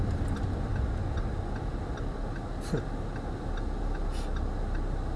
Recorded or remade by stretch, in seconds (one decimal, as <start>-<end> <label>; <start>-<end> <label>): 0.0-5.2 recorded